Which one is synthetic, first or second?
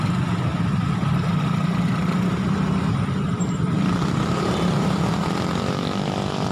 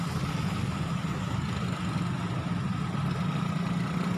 first